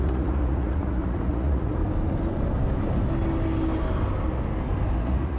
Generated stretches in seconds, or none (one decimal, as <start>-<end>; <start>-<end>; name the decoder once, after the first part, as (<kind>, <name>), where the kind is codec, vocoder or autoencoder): 0.0-1.8 (vocoder, Vocos); 5.0-5.4

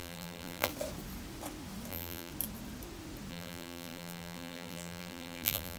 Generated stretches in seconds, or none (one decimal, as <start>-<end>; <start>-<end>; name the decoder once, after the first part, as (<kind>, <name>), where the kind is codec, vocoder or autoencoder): 0.0-0.7 (vocoder, BigVGAN v2); 1.9-2.3; 3.3-5.8